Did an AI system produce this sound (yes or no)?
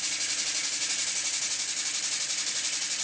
no